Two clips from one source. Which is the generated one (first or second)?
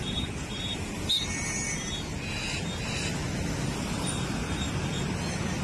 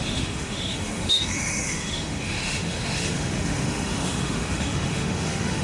second